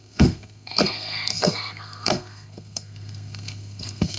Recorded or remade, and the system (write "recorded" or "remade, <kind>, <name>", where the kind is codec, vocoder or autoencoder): remade, codec, SNAC